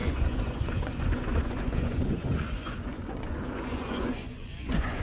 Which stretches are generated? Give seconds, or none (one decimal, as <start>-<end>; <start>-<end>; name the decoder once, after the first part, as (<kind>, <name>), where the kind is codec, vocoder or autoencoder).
0.0-5.0 (vocoder, Vocos)